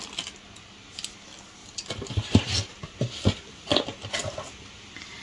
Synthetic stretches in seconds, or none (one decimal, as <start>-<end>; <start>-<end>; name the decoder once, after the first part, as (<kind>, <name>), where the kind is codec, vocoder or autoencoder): none